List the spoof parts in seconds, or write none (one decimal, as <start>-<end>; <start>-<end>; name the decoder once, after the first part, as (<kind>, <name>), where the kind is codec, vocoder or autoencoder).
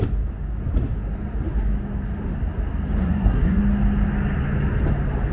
3.0-3.6 (codec, SNAC)